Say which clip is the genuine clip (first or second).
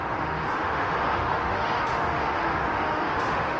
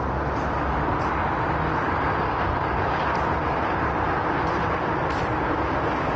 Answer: second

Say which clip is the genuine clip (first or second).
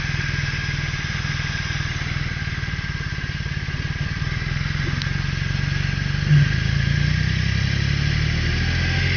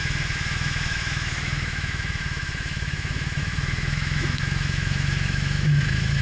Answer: first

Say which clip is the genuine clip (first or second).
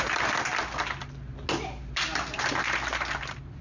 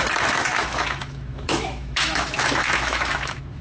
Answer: first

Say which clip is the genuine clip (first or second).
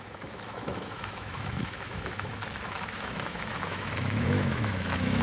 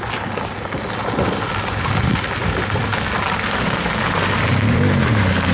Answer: second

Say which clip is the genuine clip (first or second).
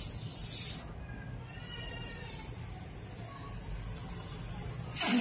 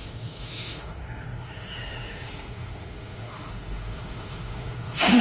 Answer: first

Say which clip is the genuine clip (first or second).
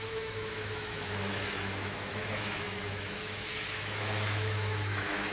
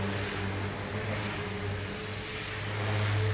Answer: second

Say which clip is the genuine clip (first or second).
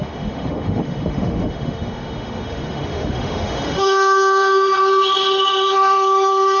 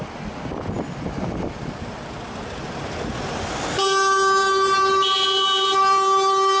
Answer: second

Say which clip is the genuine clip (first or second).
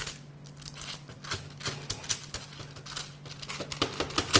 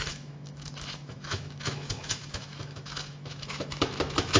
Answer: first